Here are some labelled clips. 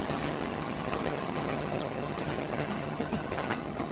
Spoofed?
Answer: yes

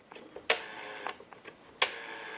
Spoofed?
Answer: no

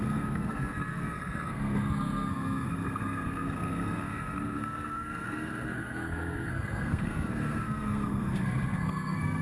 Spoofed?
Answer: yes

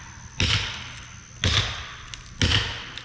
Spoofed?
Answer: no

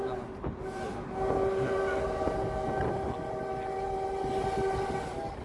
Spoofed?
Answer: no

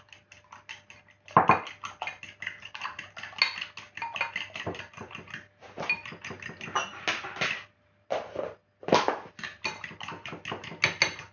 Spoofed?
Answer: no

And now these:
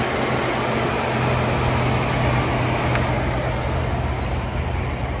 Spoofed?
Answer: no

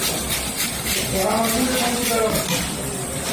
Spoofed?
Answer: no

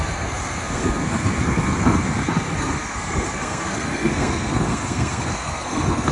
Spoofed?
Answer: yes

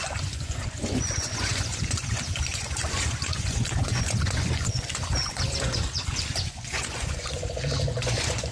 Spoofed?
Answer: yes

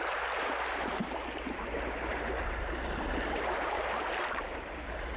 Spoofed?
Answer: yes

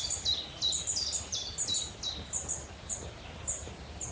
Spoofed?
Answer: no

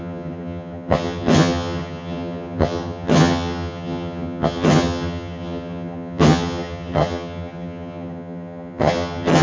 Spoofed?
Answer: yes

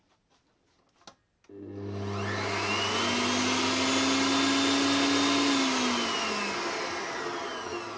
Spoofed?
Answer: no